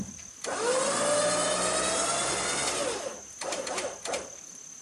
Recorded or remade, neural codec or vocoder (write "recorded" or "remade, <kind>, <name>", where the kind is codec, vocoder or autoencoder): recorded